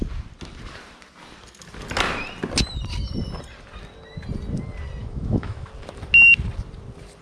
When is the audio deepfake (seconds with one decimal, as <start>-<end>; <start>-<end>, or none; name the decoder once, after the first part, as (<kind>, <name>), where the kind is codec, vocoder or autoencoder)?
5.0-5.7 (autoencoder, DAC-VAE)